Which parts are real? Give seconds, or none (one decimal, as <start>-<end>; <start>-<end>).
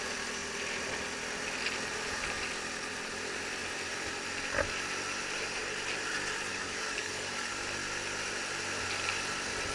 0.0-6.5; 7.5-9.7